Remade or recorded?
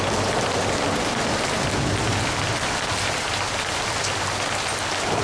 recorded